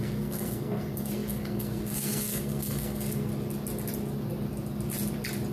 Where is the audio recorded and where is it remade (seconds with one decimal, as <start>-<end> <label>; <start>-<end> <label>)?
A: 0.0-3.3 remade; 3.3-5.5 recorded

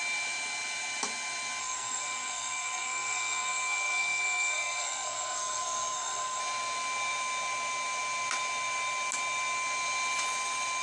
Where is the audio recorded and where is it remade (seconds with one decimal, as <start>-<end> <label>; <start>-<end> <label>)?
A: 0.0-1.6 recorded; 1.6-6.4 remade; 6.4-10.8 recorded

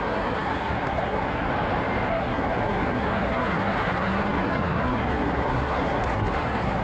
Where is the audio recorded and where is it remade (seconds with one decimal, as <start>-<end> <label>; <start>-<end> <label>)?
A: 0.0-1.5 remade; 1.5-2.1 recorded; 2.1-6.8 remade

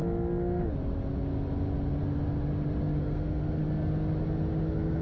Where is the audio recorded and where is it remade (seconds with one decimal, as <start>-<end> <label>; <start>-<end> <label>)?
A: 0.0-3.0 recorded; 3.0-3.6 remade; 3.6-4.6 recorded; 4.6-5.0 remade

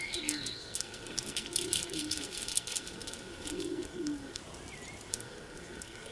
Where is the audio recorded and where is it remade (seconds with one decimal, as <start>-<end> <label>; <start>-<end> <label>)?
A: 0.0-4.4 remade; 4.4-5.1 recorded; 5.1-6.1 remade